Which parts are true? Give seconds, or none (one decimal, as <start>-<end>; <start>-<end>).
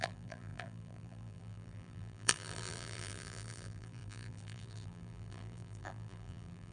none